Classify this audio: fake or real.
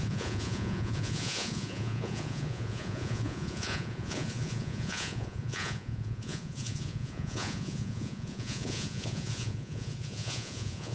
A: fake